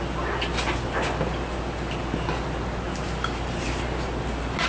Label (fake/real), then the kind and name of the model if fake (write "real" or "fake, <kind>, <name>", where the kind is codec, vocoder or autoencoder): real